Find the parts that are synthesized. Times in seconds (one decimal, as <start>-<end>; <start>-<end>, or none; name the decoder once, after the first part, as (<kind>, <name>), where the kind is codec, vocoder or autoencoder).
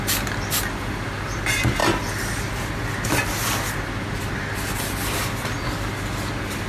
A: none